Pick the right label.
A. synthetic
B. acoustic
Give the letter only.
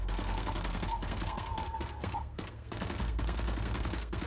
A